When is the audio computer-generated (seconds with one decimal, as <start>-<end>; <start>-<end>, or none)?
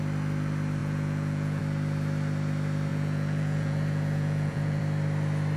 0.8-1.6; 2.9-4.8